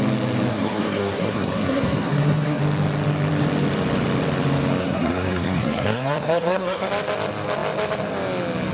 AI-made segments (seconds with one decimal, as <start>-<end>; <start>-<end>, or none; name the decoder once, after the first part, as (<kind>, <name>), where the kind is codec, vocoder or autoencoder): 0.5-2.6 (codec, SNAC); 4.8-6.9